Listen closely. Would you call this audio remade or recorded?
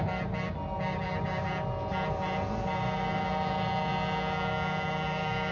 recorded